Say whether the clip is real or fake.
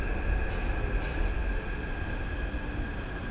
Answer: real